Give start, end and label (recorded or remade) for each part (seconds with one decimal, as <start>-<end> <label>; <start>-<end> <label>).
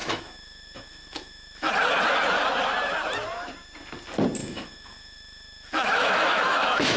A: 0.0-1.7 remade; 1.7-4.4 recorded; 4.4-7.0 remade